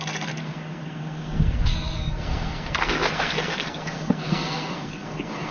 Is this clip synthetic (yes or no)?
yes